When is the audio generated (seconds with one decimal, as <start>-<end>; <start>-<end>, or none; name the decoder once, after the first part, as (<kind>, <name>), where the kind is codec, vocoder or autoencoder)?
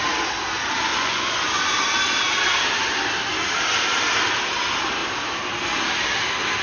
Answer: 0.9-1.4 (vocoder, Vocos)